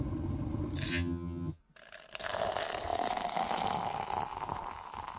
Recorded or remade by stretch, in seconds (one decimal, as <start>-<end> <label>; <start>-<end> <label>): 0.0-0.9 recorded; 0.9-1.6 remade; 1.6-5.2 recorded